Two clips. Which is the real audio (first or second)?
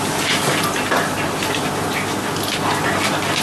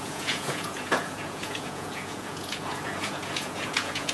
first